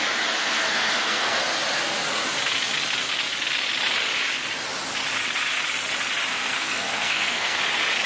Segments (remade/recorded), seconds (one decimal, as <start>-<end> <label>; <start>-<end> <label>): 0.0-0.4 recorded; 0.4-1.4 remade; 1.4-6.3 recorded; 6.3-7.6 remade; 7.6-8.1 recorded